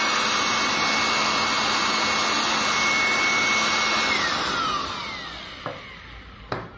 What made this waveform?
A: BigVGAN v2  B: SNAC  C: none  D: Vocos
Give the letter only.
C